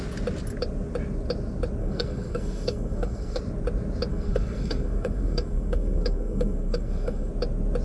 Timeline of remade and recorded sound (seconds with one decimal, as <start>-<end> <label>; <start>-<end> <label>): 0.0-1.8 recorded; 1.8-3.4 remade; 3.4-4.1 recorded; 4.1-7.3 remade; 7.3-7.8 recorded